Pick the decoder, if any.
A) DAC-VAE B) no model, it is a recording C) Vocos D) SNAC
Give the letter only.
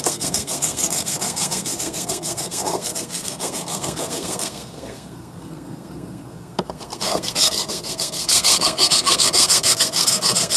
D